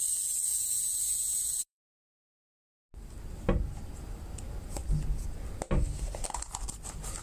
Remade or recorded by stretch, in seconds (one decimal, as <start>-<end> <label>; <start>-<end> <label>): 0.0-0.5 recorded; 0.5-2.9 remade; 2.9-7.2 recorded